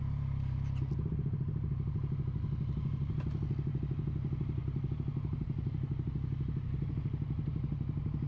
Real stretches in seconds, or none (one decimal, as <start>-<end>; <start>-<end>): 0.0-8.3